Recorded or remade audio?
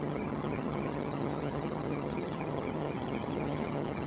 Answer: remade